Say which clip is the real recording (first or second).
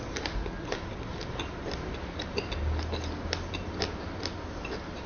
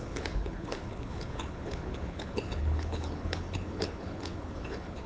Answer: first